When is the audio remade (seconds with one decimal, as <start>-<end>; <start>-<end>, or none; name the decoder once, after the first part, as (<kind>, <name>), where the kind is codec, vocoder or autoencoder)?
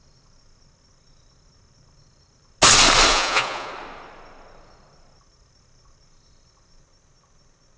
3.1-3.7 (vocoder, Vocos)